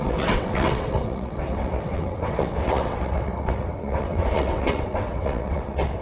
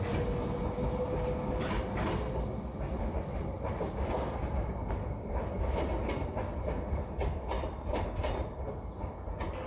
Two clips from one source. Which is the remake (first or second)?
first